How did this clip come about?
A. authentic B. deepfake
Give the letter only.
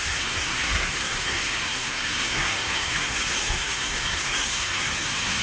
B